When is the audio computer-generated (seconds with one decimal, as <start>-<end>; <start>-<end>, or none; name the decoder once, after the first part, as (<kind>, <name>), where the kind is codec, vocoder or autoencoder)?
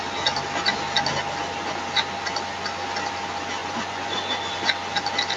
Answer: 3.6-4.3 (vocoder, Vocos)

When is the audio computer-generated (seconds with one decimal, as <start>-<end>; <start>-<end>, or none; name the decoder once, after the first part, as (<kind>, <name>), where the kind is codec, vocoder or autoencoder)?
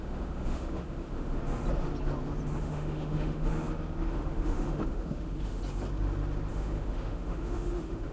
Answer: 0.0-1.4 (autoencoder, DAC-VAE); 2.6-3.5; 4.1-5.6; 6.5-8.1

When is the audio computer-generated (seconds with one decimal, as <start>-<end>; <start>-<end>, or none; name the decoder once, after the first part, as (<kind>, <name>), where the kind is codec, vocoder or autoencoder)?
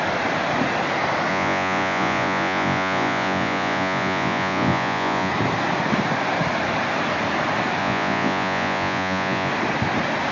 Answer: 1.3-5.3 (vocoder, Vocos); 7.8-9.5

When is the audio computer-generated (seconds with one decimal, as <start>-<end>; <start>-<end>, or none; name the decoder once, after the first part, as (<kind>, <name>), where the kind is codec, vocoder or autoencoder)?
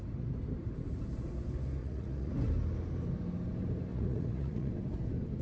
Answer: 1.8-2.3 (vocoder, Vocos); 3.9-4.7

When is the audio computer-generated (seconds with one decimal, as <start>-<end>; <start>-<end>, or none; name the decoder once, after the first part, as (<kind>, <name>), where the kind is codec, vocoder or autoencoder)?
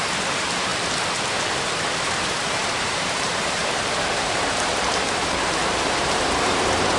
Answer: 0.0-0.7 (vocoder, BigVGAN v2); 2.0-7.0